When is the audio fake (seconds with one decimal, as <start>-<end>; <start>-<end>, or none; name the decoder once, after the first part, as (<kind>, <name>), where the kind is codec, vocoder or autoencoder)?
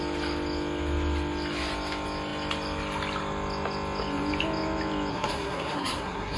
5.1-6.4 (codec, SNAC)